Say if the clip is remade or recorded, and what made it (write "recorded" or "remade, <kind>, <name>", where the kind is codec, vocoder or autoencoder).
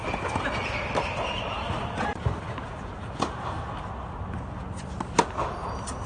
recorded